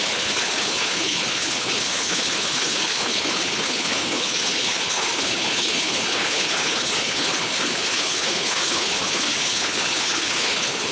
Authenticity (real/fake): fake